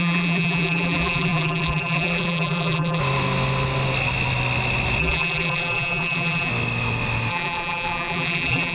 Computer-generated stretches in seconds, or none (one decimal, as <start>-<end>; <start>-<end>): 0.0-3.0; 5.0-6.5; 7.3-8.7